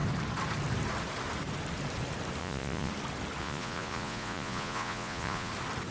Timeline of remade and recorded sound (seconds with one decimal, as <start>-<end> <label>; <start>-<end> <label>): 0.0-2.4 recorded; 2.4-2.9 remade; 2.9-3.4 recorded; 3.4-5.5 remade; 5.5-5.9 recorded

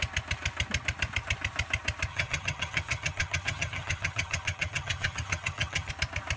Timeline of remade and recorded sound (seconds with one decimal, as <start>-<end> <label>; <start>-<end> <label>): 0.0-2.1 recorded; 2.1-5.9 remade; 5.9-6.4 recorded